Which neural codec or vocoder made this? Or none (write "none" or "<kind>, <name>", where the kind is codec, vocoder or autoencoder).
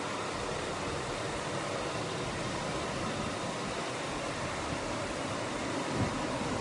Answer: none